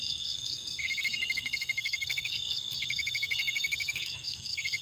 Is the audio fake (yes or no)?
yes